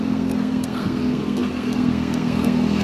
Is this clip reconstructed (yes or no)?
yes